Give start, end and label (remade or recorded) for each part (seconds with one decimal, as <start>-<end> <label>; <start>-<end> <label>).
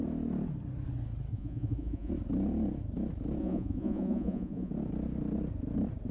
0.0-1.3 recorded; 1.3-2.1 remade; 2.1-3.4 recorded; 3.4-4.7 remade; 4.7-6.1 recorded